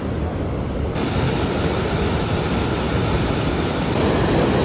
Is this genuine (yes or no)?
no